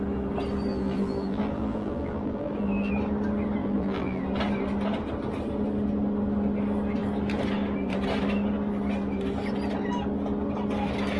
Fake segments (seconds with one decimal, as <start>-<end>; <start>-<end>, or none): 0.7-2.9; 3.6-4.2